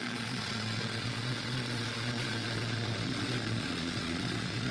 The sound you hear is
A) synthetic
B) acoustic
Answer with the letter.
A